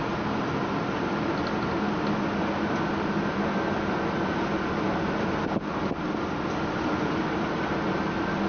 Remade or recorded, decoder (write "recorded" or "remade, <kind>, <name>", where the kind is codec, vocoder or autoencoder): recorded